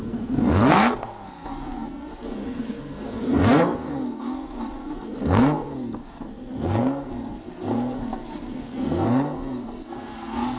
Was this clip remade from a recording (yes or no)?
yes